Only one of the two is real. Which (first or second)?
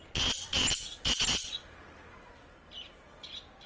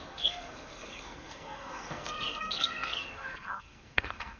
first